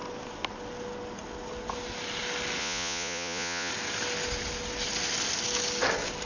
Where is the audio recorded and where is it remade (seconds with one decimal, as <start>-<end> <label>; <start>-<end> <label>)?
0.0-2.6 recorded; 2.6-3.7 remade; 3.7-6.3 recorded